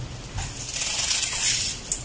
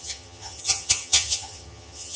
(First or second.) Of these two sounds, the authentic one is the first